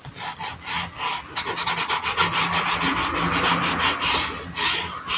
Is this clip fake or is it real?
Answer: real